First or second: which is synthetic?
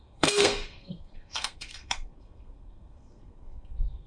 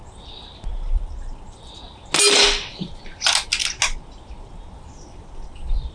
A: first